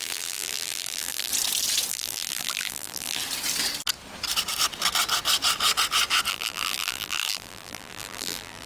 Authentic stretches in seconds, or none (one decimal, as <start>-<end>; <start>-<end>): 1.3-1.9; 3.2-6.3